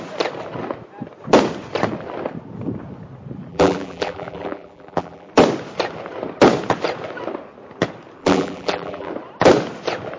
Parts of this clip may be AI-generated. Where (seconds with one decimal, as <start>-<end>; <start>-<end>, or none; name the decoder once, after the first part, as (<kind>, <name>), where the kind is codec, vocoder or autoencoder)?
3.5-5.3 (vocoder, BigVGAN v2); 8.2-9.1